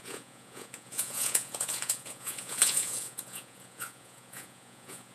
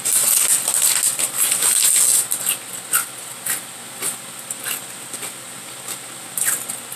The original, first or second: second